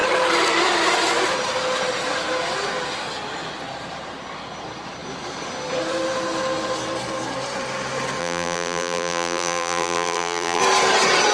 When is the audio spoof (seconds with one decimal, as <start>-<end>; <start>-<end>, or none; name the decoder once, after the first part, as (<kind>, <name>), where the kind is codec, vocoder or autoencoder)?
8.2-10.6 (vocoder, BigVGAN v2)

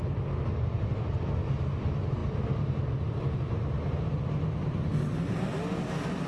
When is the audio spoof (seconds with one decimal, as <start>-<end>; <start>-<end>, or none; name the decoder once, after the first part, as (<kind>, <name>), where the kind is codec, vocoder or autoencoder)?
none

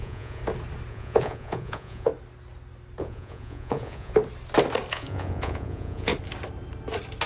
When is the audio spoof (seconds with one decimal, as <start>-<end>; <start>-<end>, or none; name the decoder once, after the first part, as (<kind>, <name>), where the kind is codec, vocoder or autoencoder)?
0.0-0.4 (vocoder, Vocos); 0.9-2.1; 3.0-4.2; 4.9-6.1

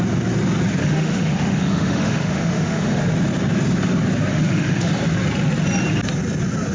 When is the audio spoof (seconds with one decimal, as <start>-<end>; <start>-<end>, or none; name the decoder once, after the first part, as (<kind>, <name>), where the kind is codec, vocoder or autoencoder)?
0.8-3.0 (autoencoder, DAC-VAE); 4.3-4.9

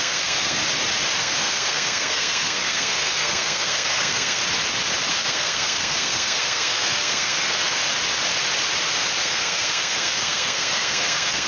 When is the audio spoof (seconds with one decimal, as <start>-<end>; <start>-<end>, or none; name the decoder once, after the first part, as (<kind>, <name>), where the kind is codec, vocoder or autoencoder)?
0.0-0.6 (codec, SNAC); 1.2-4.4; 5.1-7.8; 9.2-11.5

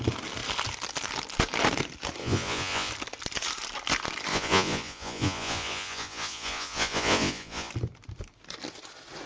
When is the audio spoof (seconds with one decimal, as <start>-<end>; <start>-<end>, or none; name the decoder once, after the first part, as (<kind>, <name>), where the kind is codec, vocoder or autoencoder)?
2.2-2.9 (vocoder, Vocos); 4.3-7.7